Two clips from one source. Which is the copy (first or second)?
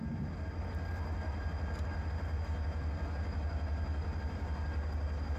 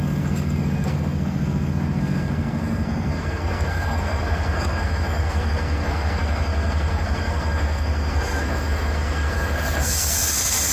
second